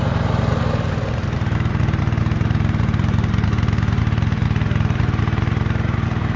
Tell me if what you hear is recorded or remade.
remade